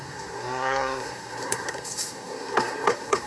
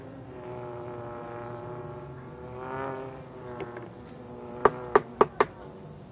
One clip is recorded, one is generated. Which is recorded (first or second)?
second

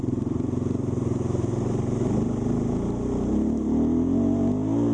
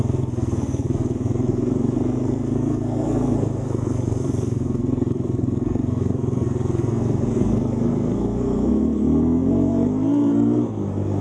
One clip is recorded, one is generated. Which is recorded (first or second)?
first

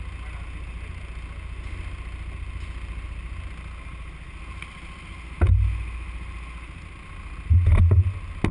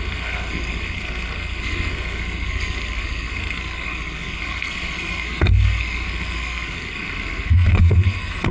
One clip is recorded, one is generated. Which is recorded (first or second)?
first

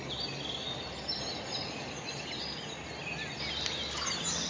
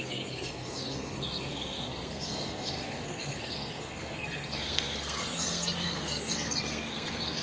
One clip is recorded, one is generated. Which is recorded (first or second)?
first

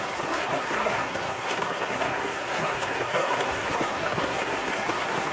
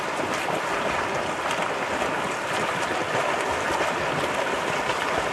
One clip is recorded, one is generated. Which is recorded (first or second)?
second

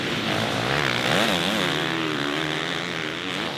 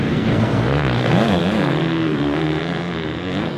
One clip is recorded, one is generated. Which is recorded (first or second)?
first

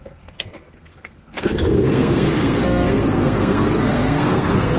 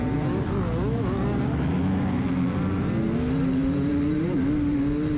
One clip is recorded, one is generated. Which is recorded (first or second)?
second